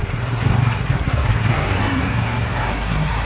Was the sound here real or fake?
fake